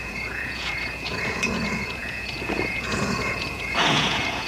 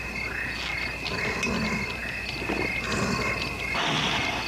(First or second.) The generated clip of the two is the first